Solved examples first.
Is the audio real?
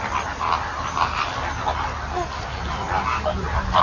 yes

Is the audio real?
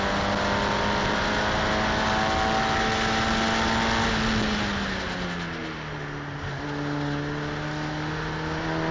yes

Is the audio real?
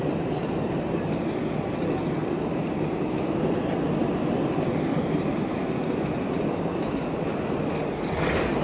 yes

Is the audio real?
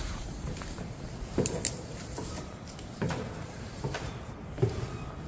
no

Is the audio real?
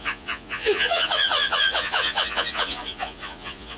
no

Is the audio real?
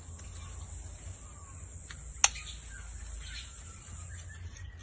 yes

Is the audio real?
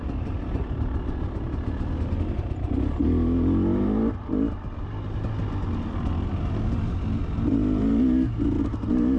yes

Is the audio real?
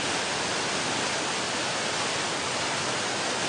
yes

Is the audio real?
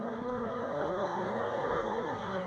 no